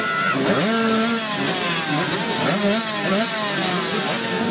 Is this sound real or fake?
real